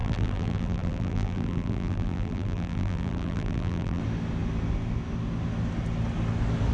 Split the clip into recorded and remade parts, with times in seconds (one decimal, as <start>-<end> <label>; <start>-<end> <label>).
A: 0.0-4.0 remade; 4.0-6.7 recorded